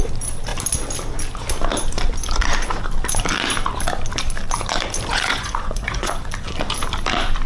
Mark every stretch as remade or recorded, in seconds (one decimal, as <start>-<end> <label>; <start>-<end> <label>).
0.0-5.1 recorded; 5.1-6.1 remade; 6.1-7.5 recorded